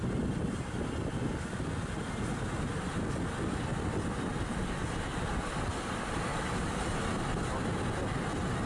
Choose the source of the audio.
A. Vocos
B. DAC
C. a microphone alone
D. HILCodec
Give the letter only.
C